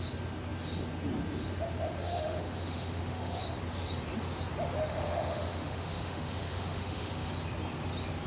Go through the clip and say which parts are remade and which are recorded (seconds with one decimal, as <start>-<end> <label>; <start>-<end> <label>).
0.0-2.0 recorded; 2.0-3.4 remade; 3.4-4.8 recorded; 4.8-7.3 remade; 7.3-8.3 recorded